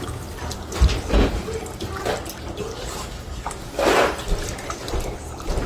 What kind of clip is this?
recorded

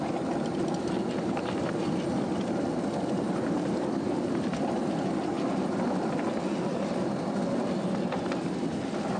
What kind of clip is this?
recorded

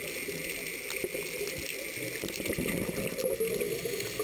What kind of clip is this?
recorded